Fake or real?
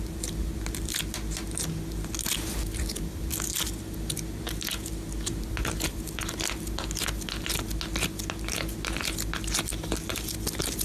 real